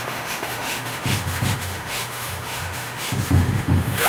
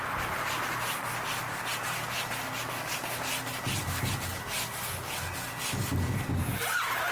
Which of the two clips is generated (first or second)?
first